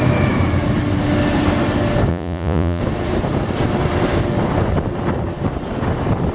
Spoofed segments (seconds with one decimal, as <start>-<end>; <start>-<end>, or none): 2.1-2.8

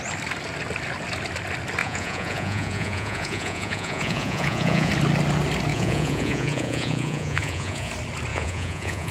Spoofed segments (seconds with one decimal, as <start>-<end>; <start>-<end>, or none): 1.8-4.9; 5.7-7.9; 8.3-9.1

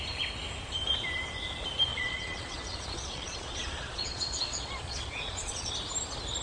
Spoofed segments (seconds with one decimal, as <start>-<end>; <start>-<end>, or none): 1.9-5.7

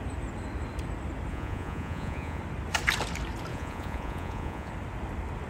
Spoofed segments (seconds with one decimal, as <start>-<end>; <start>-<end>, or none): 1.3-2.4; 3.5-4.7

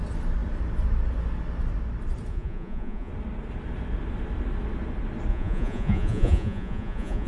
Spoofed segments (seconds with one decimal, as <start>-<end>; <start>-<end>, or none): 2.3-3.1; 5.3-7.3

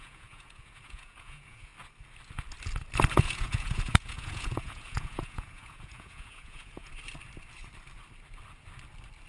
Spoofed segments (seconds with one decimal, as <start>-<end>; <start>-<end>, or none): 0.0-1.7; 3.1-6.9

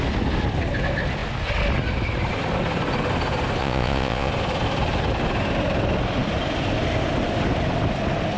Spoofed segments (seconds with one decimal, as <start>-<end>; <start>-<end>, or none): 3.6-4.3

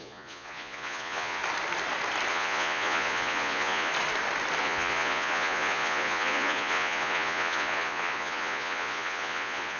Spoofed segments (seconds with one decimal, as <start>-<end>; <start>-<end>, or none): 0.0-1.4; 2.3-3.9; 4.6-9.8